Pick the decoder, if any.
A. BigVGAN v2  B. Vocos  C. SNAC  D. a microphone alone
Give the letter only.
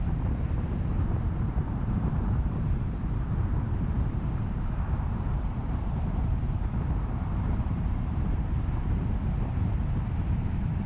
A